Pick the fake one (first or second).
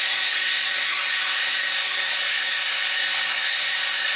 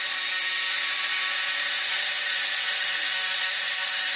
first